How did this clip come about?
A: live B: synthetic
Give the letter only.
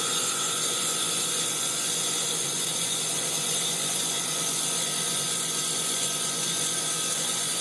B